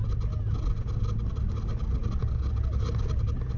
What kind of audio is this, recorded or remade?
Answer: recorded